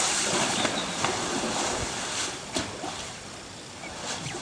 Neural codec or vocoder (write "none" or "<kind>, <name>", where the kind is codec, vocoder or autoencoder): vocoder, BigVGAN v2